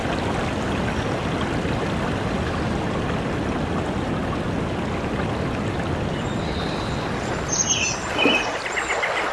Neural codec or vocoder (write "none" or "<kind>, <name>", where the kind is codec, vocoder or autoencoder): none